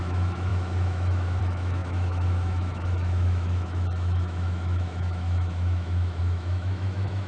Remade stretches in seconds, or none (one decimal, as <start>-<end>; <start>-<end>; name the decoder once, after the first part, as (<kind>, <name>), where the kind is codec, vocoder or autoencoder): 0.0-7.3 (autoencoder, DAC-VAE)